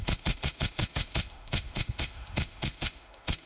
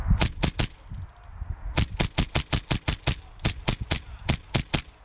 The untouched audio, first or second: second